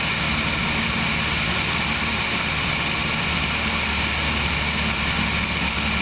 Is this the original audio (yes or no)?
yes